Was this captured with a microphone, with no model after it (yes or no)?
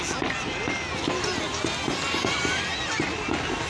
yes